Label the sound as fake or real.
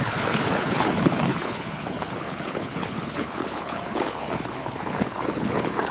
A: fake